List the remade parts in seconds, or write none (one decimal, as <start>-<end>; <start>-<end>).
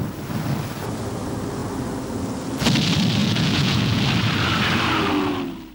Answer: 3.2-4.0